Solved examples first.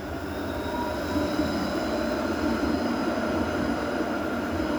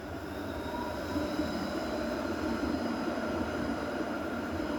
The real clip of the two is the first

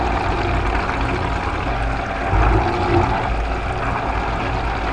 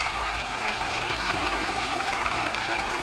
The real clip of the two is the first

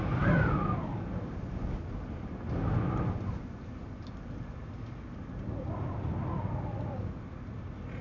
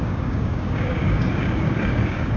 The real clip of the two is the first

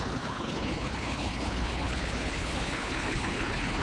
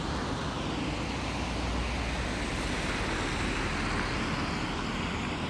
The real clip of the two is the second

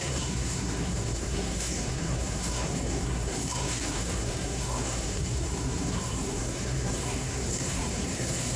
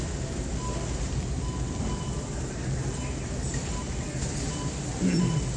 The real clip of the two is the second